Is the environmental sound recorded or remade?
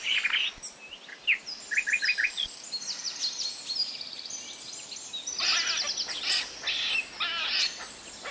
recorded